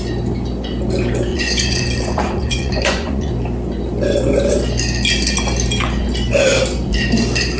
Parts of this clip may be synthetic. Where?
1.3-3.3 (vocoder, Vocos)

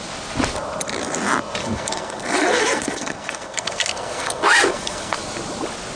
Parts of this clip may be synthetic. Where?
1.6-5.2 (codec, SNAC)